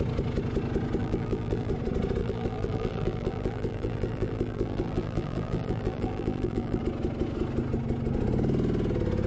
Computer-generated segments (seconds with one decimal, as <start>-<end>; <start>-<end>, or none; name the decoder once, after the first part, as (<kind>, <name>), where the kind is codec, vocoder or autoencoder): 1.0-1.7 (vocoder, BigVGAN v2); 2.2-6.8